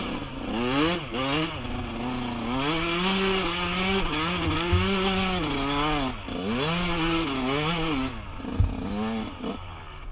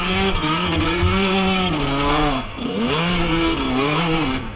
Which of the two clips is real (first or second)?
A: first